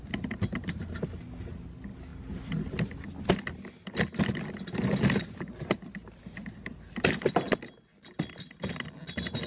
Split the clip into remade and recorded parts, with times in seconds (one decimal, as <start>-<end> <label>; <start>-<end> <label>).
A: 0.0-9.5 recorded

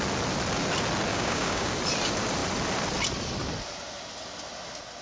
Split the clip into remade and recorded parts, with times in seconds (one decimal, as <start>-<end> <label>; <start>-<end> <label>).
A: 0.0-1.1 recorded; 1.1-1.7 remade; 1.7-5.0 recorded

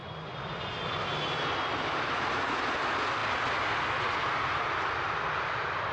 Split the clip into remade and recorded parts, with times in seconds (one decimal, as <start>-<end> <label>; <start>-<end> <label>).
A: 0.0-3.2 recorded; 3.2-3.9 remade; 3.9-5.9 recorded